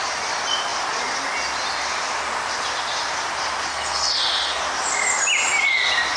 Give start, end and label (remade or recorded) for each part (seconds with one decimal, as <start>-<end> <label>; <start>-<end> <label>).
0.0-3.7 recorded; 3.7-4.6 remade; 4.6-6.2 recorded